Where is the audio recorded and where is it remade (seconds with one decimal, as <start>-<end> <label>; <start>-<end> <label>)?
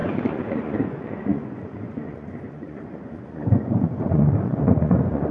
0.0-5.3 remade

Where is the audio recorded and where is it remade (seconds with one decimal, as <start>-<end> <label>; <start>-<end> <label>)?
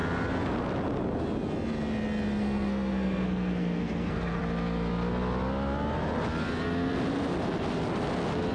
0.0-2.4 recorded; 2.4-4.4 remade; 4.4-8.5 recorded